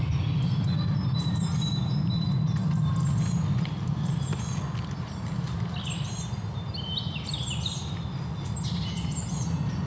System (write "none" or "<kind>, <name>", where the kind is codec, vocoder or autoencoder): none